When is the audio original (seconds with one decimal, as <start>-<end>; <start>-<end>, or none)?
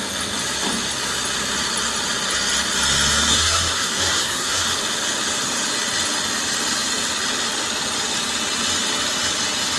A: 0.0-3.3; 4.6-9.8